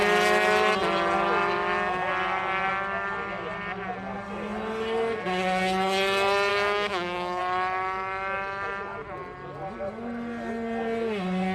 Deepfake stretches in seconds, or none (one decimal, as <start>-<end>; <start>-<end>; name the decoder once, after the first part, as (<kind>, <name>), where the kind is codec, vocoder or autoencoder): 6.5-7.4 (autoencoder, DAC-VAE)